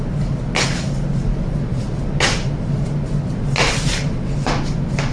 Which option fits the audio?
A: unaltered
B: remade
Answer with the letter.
A